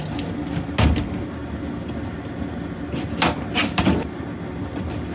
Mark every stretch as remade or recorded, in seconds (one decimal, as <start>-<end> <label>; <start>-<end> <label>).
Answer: 0.0-5.1 recorded